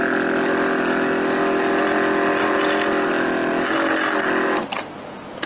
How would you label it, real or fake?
real